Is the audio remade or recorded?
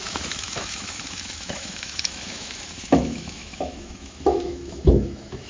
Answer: remade